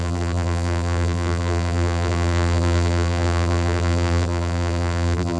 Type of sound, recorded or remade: remade